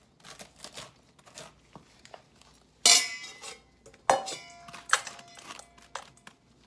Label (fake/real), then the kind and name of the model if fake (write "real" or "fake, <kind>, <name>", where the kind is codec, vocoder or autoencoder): real